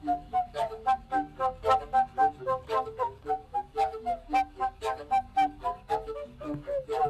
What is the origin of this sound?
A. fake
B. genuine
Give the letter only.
A